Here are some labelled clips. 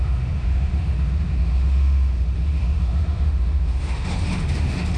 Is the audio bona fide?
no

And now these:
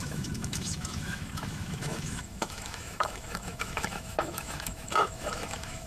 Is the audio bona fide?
no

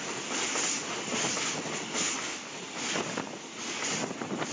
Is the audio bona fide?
yes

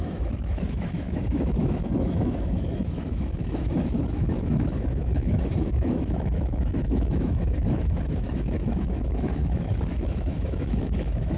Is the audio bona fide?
no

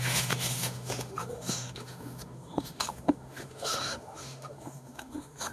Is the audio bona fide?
no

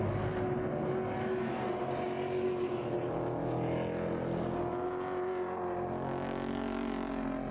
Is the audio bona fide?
yes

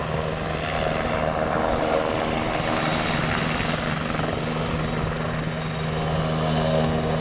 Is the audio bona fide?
yes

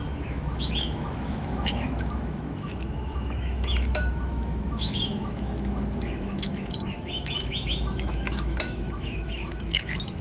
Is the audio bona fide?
no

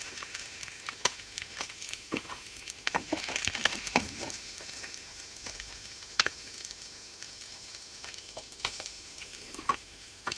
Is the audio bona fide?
no